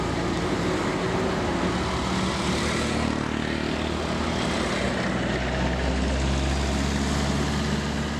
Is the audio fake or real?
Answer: real